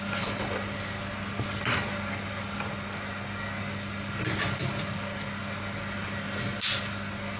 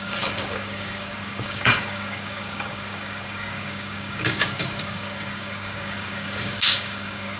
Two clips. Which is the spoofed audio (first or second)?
second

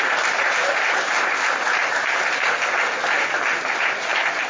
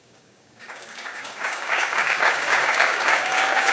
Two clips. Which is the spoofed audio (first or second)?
second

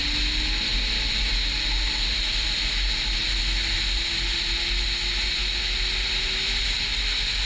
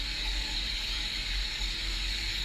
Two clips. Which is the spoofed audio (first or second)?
second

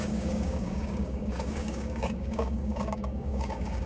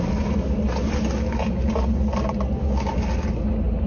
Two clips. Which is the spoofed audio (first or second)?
first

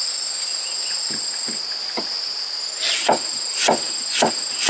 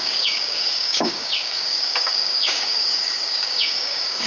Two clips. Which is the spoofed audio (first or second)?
second